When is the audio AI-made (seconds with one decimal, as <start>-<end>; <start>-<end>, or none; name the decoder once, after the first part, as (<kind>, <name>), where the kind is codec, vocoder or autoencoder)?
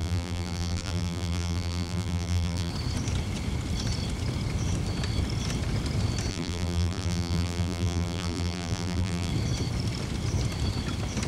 0.0-2.7 (vocoder, BigVGAN v2); 6.3-9.3